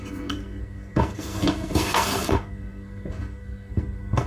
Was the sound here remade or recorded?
remade